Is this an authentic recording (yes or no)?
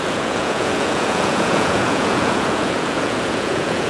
no